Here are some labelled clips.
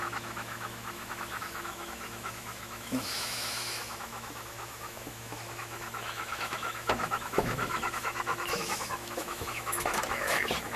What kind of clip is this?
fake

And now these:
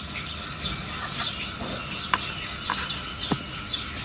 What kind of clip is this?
fake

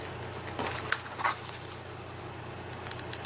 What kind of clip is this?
real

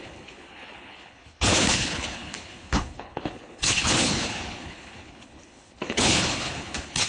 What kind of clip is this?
fake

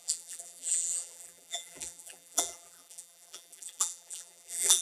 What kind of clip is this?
fake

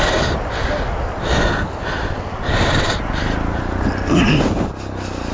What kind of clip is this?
real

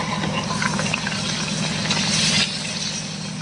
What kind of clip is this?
real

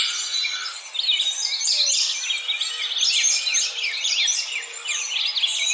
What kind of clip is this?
real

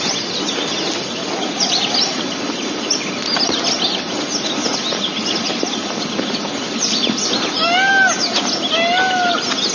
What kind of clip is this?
real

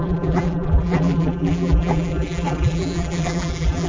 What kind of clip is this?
fake